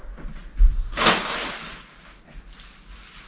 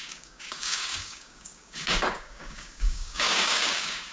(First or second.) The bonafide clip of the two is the first